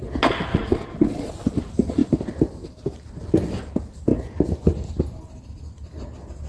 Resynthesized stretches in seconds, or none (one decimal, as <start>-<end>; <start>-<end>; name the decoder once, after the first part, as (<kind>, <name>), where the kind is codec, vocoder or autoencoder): 0.5-1.3 (vocoder, Vocos)